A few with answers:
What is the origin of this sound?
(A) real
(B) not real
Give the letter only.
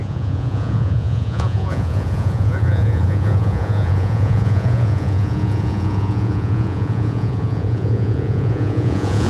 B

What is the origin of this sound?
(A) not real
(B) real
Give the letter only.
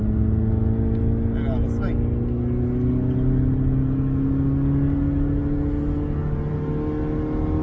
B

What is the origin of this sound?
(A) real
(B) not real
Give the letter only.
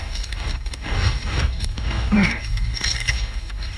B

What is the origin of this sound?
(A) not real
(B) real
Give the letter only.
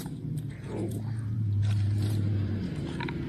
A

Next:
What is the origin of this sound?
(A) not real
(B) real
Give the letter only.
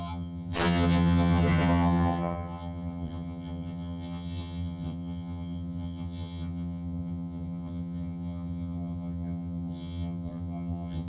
A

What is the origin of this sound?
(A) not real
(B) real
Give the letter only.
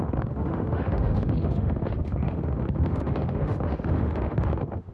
A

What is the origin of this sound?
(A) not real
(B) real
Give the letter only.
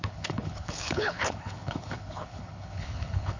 A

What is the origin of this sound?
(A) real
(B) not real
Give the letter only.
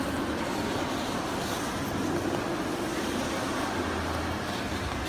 A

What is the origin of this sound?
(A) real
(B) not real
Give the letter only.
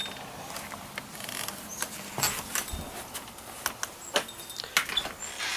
A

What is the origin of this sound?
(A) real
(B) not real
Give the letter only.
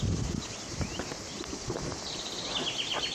A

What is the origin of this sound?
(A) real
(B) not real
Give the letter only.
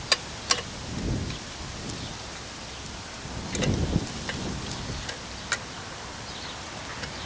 A